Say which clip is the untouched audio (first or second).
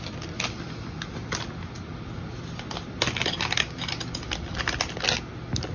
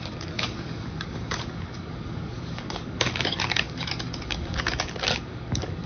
first